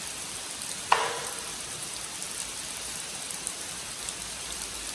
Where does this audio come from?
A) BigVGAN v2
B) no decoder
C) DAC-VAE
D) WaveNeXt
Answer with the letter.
A